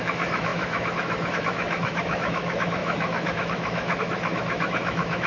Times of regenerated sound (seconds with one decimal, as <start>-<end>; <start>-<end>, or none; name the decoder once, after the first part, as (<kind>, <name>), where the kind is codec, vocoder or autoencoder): 0.0-5.3 (autoencoder, DAC-VAE)